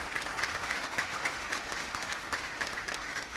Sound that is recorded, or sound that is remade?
remade